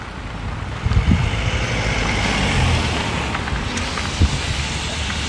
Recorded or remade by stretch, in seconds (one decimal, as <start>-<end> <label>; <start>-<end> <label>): 0.0-5.3 recorded